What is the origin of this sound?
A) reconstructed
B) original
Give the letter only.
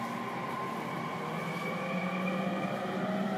B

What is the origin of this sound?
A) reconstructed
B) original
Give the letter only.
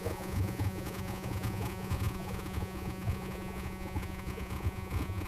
A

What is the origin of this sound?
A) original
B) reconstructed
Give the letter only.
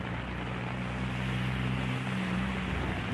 A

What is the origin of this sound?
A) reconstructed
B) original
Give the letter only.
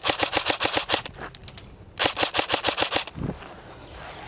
B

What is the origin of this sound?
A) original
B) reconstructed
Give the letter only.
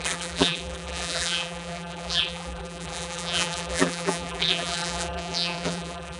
B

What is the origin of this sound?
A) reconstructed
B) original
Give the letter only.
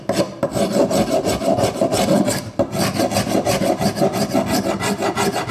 B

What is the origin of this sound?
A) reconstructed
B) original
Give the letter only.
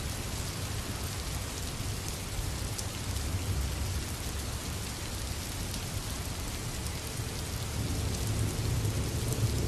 B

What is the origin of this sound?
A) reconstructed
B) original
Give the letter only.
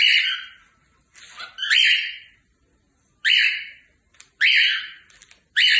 B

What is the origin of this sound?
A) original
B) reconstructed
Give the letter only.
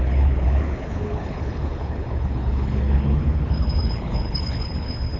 B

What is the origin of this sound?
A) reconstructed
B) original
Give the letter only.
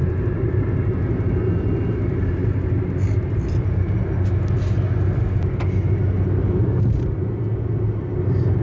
B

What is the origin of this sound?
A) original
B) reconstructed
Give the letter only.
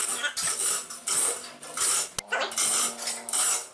A